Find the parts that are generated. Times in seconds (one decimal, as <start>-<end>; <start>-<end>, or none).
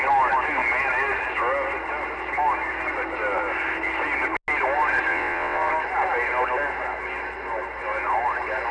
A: 5.1-5.7